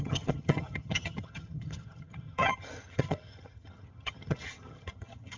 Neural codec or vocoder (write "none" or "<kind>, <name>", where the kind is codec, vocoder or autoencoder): vocoder, HiFi-GAN